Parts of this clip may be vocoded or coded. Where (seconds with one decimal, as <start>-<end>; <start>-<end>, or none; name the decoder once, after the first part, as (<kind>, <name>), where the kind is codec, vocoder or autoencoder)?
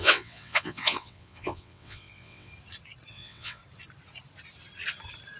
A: 0.0-2.5 (vocoder, WaveNeXt); 3.1-3.6